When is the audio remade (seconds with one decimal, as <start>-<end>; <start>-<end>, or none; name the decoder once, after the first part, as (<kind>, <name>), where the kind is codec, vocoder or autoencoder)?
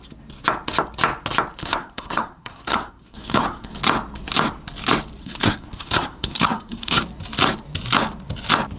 1.6-3.7 (codec, SNAC); 5.2-7.0